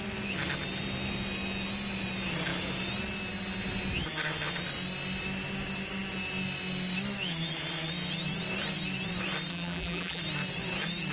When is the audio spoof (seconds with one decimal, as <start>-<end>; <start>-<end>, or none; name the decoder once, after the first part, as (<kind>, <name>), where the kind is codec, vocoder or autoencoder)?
9.5-10.2 (vocoder, BigVGAN v2)